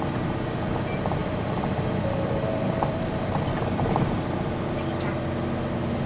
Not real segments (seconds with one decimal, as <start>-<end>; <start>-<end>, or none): 1.2-4.8